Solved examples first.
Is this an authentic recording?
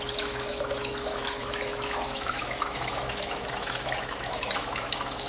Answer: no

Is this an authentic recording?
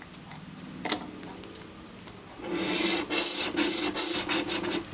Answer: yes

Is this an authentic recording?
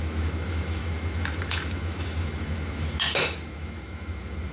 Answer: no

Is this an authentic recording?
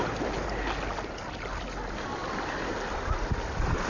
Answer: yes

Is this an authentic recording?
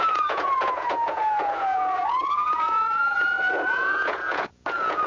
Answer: no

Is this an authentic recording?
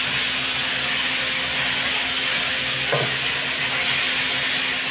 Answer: yes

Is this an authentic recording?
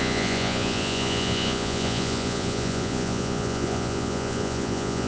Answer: no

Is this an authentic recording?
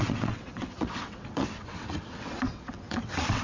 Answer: no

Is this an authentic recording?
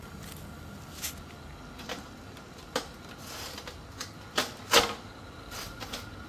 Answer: yes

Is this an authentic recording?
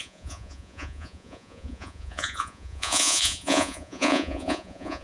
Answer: no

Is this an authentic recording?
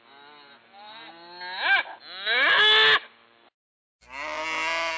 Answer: yes